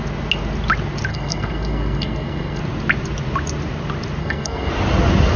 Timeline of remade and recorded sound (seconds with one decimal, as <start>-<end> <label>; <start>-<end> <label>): 0.0-1.1 recorded; 1.1-2.6 remade; 2.6-4.2 recorded; 4.2-4.7 remade; 4.7-5.4 recorded